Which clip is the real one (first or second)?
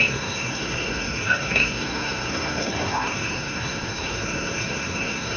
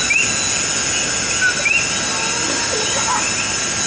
second